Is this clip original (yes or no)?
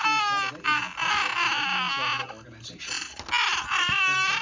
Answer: yes